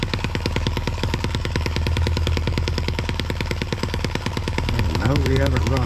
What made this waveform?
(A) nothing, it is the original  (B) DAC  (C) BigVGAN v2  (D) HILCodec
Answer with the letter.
B